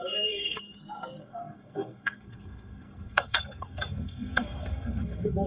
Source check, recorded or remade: remade